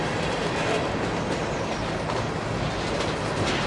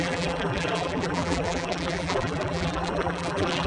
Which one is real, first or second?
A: first